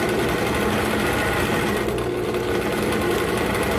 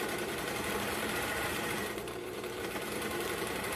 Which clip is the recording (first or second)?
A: first